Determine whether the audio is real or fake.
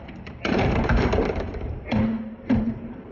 fake